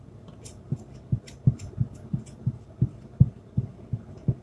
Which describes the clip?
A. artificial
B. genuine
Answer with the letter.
B